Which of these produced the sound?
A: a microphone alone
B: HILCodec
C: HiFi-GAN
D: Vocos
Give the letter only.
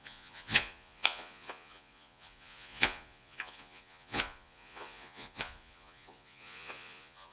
D